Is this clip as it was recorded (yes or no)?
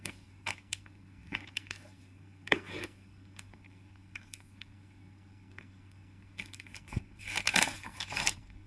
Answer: no